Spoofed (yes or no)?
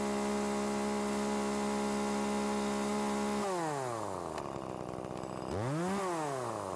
no